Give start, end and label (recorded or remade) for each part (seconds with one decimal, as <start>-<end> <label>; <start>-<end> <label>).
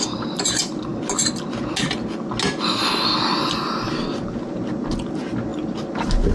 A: 0.0-6.3 recorded